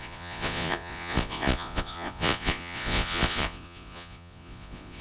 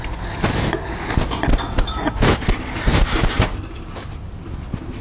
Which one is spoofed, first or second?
first